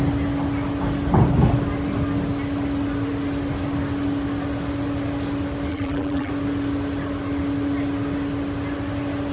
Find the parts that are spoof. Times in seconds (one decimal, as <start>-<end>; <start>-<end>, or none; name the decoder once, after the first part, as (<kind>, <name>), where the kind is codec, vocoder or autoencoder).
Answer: 5.7-6.3 (vocoder, BigVGAN v2)